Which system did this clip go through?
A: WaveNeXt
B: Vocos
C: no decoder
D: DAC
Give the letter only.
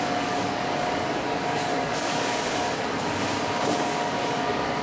D